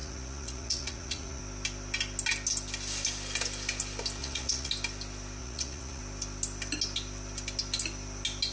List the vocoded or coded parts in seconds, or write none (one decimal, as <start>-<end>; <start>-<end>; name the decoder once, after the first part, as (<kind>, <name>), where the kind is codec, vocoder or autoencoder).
0.0-1.4 (vocoder, Vocos); 4.2-4.7; 5.4-6.0